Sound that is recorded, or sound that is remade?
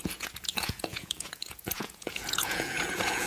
remade